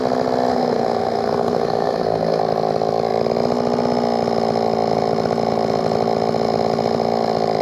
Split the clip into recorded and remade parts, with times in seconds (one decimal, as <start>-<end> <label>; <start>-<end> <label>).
0.0-0.5 recorded; 0.5-2.4 remade; 2.4-7.6 recorded

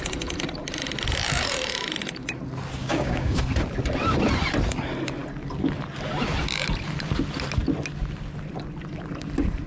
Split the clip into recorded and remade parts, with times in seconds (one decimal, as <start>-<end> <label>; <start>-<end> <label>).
0.0-2.8 recorded; 2.8-3.4 remade; 3.4-9.7 recorded

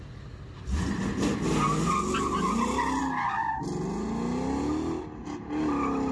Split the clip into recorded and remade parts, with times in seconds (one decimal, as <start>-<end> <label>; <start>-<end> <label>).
0.0-6.1 recorded

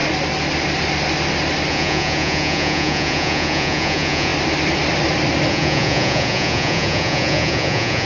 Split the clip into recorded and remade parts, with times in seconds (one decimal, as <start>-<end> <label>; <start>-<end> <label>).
0.0-1.7 recorded; 1.7-4.3 remade; 4.3-5.5 recorded; 5.5-8.1 remade

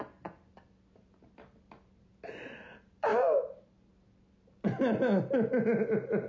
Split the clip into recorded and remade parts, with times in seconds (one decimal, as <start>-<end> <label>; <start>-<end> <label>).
0.0-6.3 recorded